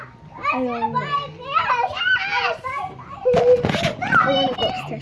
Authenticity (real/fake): real